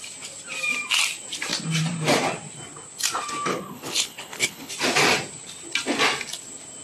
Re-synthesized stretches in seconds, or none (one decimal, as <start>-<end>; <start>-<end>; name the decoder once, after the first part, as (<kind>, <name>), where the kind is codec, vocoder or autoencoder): 3.5-4.7 (codec, HILCodec)

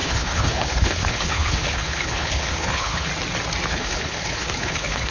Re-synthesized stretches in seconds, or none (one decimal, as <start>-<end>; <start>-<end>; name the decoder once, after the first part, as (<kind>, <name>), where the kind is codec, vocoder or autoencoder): 0.0-3.1 (codec, HILCodec); 3.7-5.1

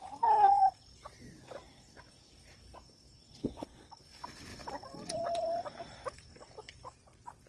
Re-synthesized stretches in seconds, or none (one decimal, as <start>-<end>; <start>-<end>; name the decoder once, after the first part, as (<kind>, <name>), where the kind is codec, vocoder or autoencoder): 3.4-4.0 (codec, HILCodec)

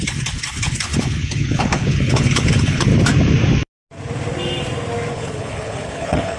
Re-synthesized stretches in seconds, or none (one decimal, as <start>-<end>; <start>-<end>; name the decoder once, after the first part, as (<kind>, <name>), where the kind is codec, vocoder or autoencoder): 0.0-2.9 (codec, HILCodec); 5.1-6.4

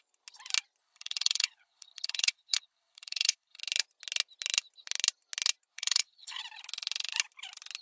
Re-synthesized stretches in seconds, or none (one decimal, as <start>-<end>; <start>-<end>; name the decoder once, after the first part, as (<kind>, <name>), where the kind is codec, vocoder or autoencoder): 0.8-3.6 (codec, HILCodec); 5.7-6.4

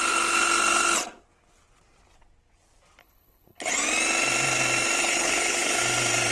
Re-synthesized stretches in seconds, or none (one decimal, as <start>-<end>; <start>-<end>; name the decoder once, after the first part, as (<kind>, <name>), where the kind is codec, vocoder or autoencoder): 3.0-3.7 (codec, HILCodec); 5.0-5.8